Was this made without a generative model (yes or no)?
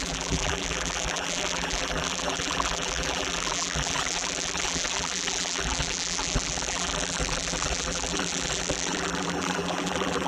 no